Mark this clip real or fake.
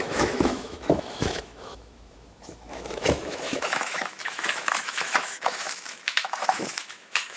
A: fake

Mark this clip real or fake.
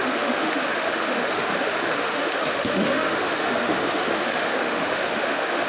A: fake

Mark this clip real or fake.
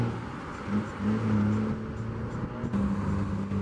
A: real